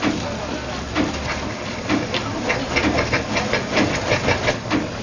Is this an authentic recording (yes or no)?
yes